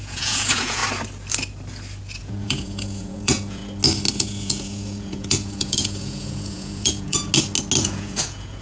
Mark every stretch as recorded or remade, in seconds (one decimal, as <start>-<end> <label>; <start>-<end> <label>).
0.0-0.8 remade; 0.8-2.2 recorded; 2.2-3.6 remade; 3.6-4.1 recorded; 4.1-7.3 remade; 7.3-7.8 recorded; 7.8-8.6 remade